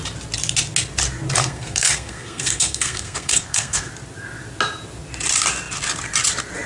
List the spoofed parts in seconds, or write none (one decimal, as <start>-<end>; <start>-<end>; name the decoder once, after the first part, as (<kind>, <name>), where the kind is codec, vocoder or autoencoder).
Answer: 1.4-3.9 (codec, SNAC)